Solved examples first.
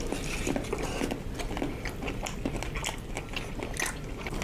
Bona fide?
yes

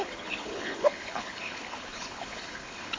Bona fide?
no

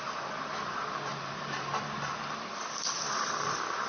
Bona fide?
no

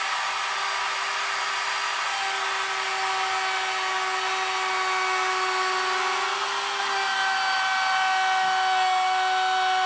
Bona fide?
yes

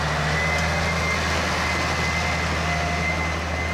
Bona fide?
yes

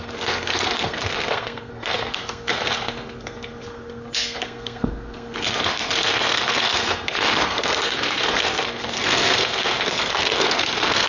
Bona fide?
no